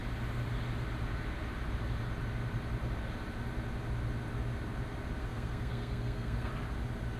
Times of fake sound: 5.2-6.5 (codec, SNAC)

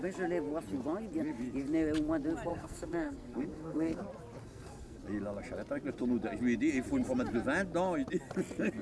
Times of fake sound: 2.5-4.0 (codec, SNAC); 4.4-5.0

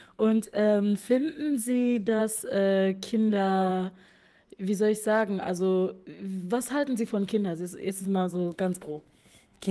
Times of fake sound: 0.0-2.2 (codec, SNAC); 3.3-3.7; 7.9-9.7

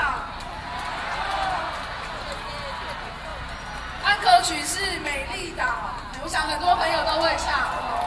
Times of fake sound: none

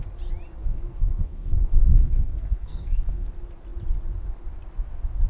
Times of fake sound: 0.6-3.3 (codec, SNAC)

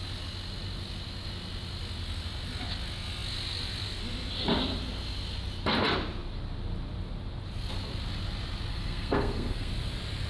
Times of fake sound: 8.7-9.7 (codec, SNAC)